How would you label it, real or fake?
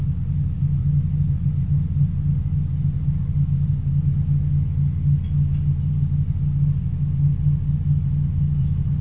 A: real